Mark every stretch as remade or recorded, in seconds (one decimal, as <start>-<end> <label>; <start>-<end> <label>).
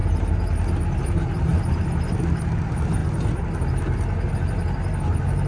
0.0-5.5 recorded